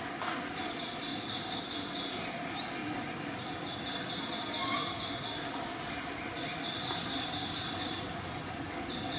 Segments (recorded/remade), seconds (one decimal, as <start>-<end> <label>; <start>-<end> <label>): 0.0-1.1 recorded; 1.1-1.6 remade; 1.6-7.0 recorded; 7.0-8.0 remade; 8.0-9.2 recorded